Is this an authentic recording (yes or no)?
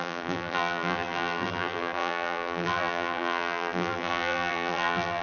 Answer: no